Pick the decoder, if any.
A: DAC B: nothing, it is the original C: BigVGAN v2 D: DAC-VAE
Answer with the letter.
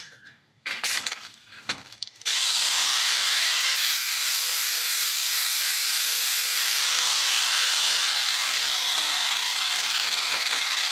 A